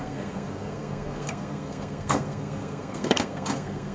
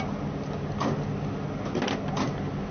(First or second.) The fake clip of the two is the first